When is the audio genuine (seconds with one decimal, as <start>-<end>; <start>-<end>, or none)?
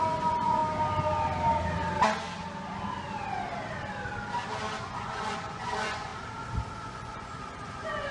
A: 0.6-4.8; 6.1-6.7